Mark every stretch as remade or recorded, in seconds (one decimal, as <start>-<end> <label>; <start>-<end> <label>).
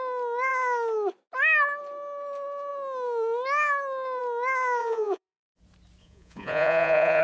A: 0.0-4.8 recorded; 4.8-5.6 remade; 5.6-6.0 recorded; 6.0-7.2 remade